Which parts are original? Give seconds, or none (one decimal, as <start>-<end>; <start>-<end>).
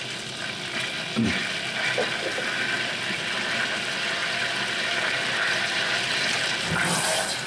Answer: 0.0-7.5